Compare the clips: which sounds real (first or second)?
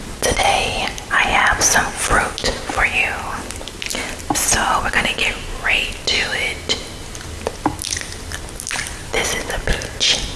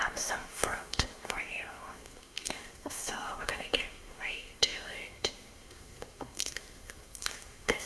first